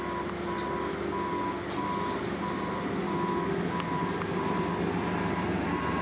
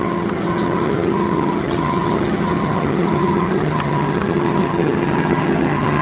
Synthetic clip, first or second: second